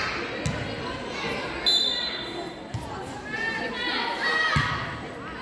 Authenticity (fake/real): real